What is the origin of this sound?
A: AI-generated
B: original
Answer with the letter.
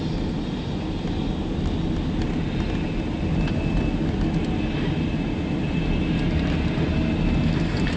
B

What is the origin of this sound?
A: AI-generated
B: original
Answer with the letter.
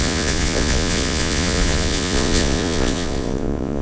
A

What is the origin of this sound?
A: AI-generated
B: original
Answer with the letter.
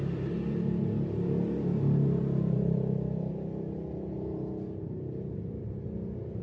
B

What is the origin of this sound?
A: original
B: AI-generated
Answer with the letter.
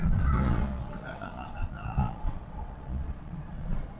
B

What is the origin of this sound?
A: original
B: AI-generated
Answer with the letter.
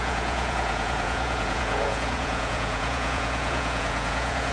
B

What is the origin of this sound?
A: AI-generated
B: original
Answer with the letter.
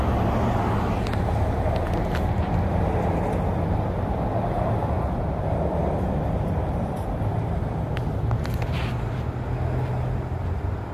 B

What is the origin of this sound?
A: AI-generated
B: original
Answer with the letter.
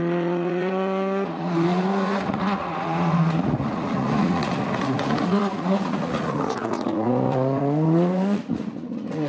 A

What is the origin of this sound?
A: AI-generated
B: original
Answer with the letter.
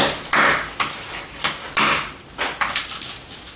B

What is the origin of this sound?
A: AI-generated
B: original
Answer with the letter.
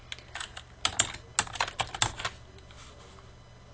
B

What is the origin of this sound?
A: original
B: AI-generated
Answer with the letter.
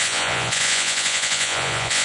B